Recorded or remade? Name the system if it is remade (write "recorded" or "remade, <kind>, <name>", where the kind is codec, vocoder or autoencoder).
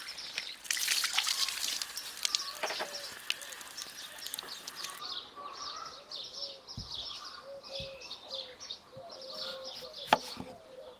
recorded